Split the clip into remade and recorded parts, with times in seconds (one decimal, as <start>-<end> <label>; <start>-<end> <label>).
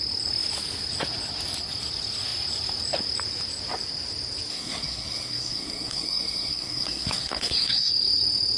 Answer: 0.0-4.5 recorded; 4.5-7.9 remade; 7.9-8.6 recorded